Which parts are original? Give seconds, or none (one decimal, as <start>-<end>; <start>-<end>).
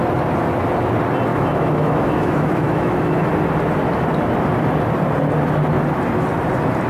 0.0-1.3; 3.2-6.9